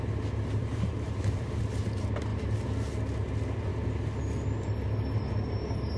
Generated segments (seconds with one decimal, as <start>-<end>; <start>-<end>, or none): 0.6-1.6